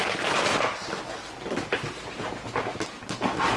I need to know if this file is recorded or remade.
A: recorded